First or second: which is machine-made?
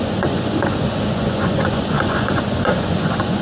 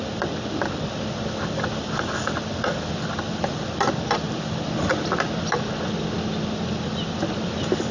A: first